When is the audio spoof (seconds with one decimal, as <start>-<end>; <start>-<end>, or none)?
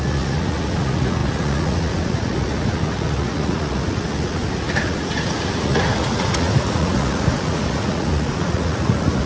0.0-9.3